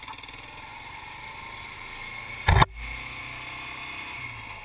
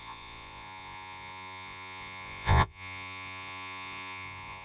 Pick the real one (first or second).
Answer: first